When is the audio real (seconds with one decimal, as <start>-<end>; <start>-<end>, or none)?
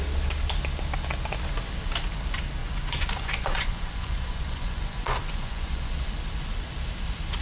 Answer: 0.0-2.6; 5.9-7.4